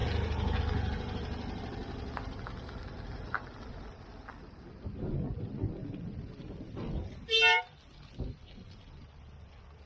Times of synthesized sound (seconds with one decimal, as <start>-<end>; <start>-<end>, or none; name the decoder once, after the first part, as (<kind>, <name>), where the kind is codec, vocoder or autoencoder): none